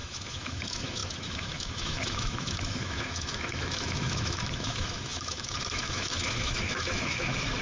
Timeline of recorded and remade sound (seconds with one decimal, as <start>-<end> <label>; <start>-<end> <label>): 0.0-7.6 remade